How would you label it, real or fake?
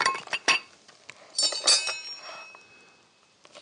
real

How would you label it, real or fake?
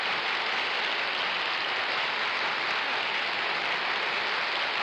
real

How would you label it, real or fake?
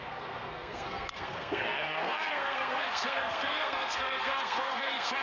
fake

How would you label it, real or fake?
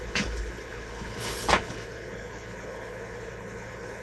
fake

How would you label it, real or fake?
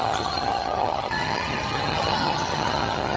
fake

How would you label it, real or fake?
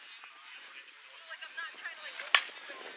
real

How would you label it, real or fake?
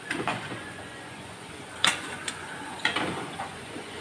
fake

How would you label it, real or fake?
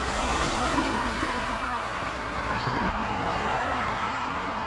fake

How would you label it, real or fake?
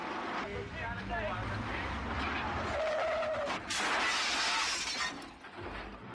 real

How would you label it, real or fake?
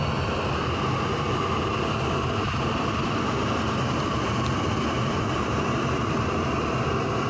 fake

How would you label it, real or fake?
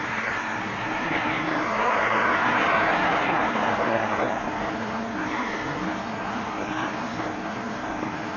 fake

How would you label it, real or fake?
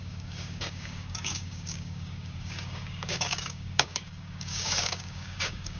fake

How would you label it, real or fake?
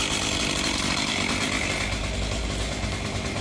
real